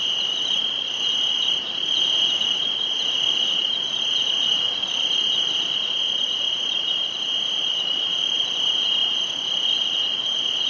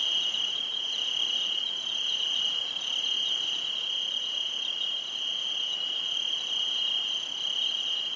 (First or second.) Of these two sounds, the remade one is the first